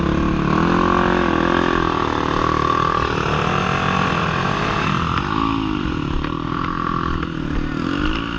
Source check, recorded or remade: recorded